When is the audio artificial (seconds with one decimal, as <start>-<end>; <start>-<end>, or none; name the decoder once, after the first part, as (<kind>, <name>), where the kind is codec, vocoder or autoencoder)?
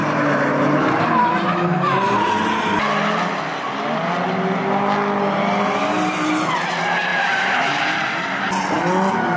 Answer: 7.1-7.7 (vocoder, BigVGAN v2)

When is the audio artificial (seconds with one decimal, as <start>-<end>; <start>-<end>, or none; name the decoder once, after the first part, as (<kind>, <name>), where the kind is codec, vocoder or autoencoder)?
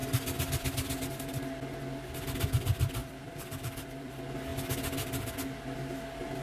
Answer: 3.0-4.1 (vocoder, BigVGAN v2)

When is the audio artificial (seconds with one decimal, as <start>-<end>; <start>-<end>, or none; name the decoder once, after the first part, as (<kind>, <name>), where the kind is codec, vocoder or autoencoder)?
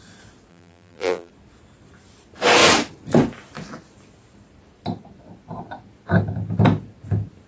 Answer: 0.5-1.3 (vocoder, BigVGAN v2)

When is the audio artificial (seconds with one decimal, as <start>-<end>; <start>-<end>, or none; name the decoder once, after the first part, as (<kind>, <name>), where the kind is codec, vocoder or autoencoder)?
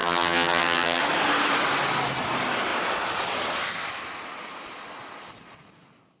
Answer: 0.0-1.0 (vocoder, HiFi-GAN)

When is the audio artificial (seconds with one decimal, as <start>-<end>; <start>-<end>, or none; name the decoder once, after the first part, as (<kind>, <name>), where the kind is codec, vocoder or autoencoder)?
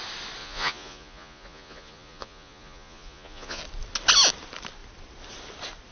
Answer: 0.4-3.6 (vocoder, Vocos)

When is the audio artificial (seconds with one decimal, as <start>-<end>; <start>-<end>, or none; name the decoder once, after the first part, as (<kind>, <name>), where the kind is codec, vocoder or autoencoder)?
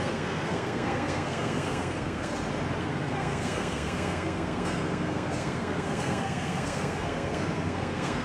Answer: 0.0-2.3 (codec, SNAC); 2.8-8.2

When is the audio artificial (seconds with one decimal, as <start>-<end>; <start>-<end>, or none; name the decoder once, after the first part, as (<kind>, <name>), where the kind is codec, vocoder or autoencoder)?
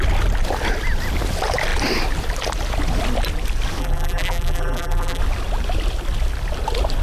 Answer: 3.8-5.2 (vocoder, BigVGAN v2)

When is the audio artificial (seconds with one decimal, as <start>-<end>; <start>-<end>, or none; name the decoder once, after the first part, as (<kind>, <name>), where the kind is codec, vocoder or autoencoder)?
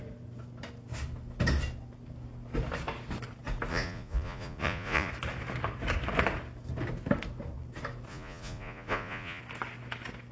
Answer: 3.7-5.1 (vocoder, Vocos); 8.1-9.4